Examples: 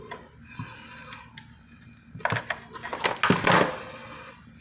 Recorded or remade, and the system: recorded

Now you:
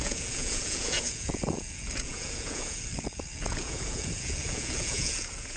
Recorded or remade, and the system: remade, vocoder, Vocos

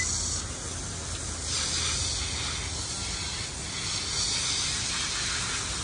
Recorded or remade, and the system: recorded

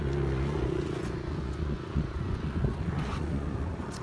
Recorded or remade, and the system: remade, vocoder, Vocos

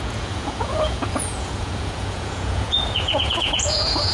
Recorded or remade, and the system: remade, vocoder, Vocos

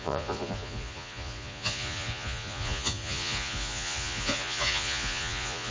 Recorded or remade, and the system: remade, vocoder, Vocos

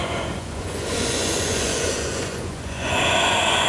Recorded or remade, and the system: remade, vocoder, Vocos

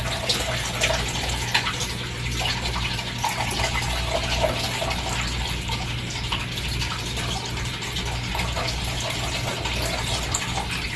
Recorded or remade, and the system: recorded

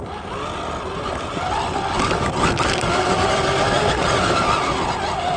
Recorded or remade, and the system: recorded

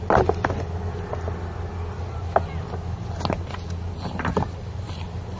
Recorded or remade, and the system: recorded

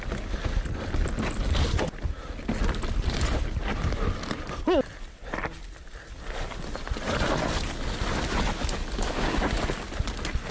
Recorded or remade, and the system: recorded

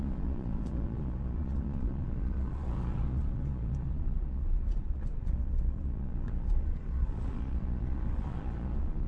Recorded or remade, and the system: remade, vocoder, Vocos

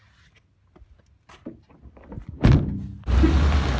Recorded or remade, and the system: recorded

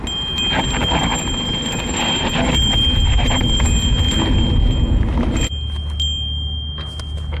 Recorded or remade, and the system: recorded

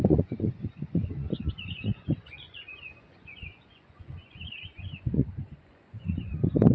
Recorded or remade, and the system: remade, vocoder, Vocos